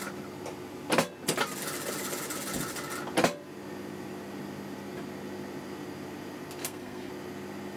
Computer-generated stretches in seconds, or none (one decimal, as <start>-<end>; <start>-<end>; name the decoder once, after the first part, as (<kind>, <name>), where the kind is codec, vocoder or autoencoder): 6.6-7.1 (codec, SNAC)